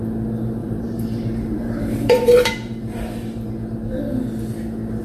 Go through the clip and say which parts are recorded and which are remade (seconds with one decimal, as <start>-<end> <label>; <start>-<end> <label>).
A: 0.0-0.6 recorded; 0.6-3.5 remade; 3.5-5.0 recorded

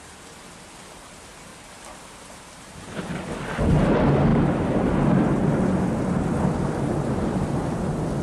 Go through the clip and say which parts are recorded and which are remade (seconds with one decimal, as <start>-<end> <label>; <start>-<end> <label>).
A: 0.0-1.5 recorded; 1.5-3.0 remade; 3.0-4.3 recorded; 4.3-4.9 remade; 4.9-8.2 recorded

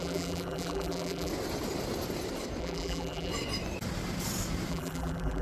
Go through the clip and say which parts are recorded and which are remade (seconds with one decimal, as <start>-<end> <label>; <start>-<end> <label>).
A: 0.0-1.3 remade; 1.3-2.6 recorded; 2.6-3.3 remade; 3.3-4.7 recorded; 4.7-5.4 remade